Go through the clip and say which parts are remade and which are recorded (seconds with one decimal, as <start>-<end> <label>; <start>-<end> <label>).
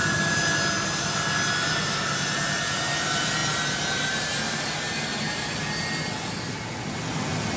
0.0-7.6 recorded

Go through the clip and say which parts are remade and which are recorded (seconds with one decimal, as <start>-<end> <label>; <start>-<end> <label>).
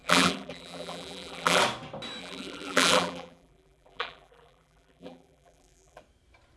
0.0-1.6 remade; 1.6-2.2 recorded; 2.2-6.0 remade; 6.0-6.6 recorded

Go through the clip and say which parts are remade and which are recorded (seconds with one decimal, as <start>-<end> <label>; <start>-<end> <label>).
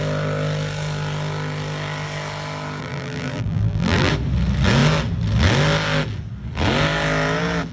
0.0-2.8 recorded; 2.8-4.1 remade; 4.1-7.7 recorded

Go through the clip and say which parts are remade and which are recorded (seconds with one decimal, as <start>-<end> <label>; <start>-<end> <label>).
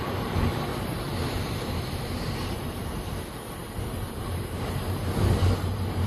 0.0-0.7 remade; 0.7-1.2 recorded; 1.2-6.1 remade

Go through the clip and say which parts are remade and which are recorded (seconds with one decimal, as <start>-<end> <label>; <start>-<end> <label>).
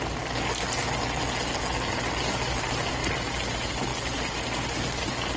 0.0-5.4 recorded